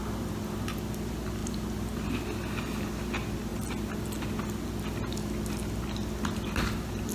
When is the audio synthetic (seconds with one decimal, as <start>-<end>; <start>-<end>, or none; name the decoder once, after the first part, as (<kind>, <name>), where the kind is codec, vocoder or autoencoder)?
none